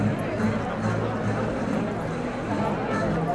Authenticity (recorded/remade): recorded